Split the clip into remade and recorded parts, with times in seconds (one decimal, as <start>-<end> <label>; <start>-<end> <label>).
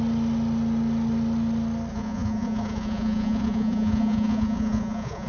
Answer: 0.0-1.9 recorded; 1.9-5.3 remade